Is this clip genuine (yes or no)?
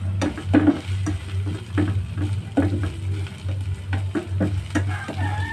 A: yes